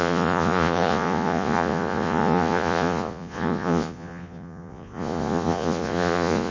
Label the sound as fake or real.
fake